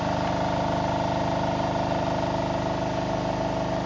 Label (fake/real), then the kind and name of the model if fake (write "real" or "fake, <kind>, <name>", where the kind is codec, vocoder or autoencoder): real